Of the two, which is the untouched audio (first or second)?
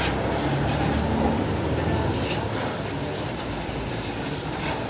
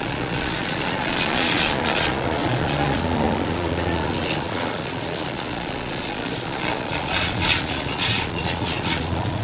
first